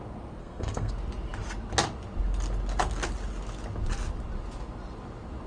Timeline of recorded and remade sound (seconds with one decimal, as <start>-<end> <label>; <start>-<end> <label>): 0.0-0.4 recorded; 0.4-0.9 remade; 0.9-5.5 recorded